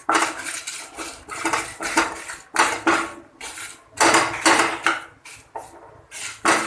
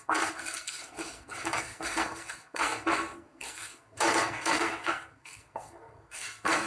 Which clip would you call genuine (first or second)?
first